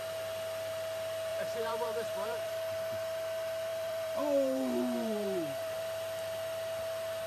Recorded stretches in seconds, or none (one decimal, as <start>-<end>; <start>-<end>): 0.0-1.3; 2.5-3.7; 5.8-7.3